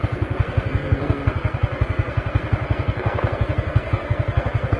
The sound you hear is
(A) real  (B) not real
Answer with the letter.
B